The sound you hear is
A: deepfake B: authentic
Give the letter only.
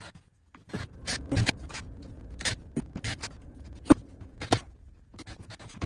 A